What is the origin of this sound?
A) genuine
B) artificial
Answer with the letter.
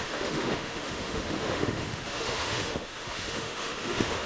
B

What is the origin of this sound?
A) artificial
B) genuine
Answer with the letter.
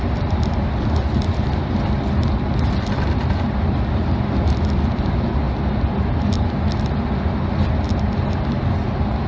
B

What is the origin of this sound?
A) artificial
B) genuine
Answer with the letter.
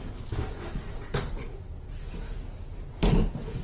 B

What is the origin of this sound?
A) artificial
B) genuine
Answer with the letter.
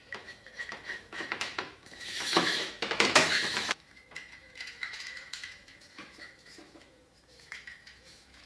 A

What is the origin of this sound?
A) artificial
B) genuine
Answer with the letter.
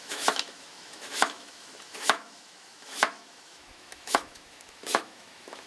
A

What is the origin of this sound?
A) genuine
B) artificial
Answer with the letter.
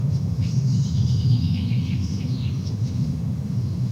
B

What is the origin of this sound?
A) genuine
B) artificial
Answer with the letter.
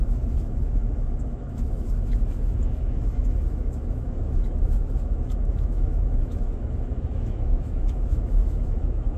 B